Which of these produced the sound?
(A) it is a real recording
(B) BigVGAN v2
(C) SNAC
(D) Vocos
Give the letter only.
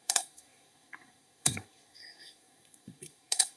C